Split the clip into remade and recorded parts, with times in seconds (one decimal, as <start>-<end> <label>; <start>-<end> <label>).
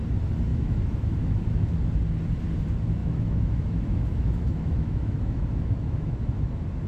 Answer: 0.0-0.5 recorded; 0.5-1.8 remade; 1.8-3.0 recorded; 3.0-6.5 remade; 6.5-6.9 recorded